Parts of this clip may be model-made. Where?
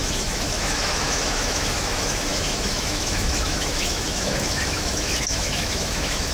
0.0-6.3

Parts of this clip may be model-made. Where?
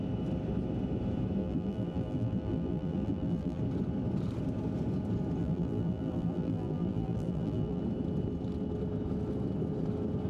1.4-3.6; 5.4-7.8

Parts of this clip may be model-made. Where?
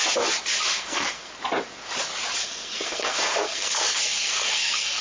0.7-1.3; 2.4-5.0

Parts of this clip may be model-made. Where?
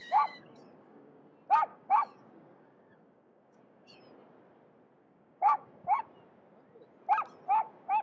0.0-1.2; 1.7-4.0; 5.0-6.0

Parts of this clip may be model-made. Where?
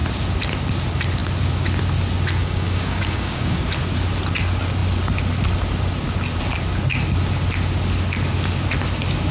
2.4-3.6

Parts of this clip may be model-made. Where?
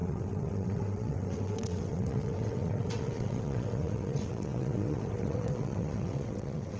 0.0-6.8